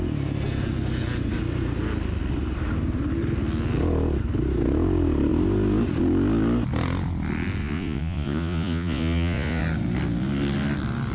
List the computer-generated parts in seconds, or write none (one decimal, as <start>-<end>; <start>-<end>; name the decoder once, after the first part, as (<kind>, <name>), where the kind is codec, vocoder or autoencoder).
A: 7.6-9.6 (vocoder, Vocos)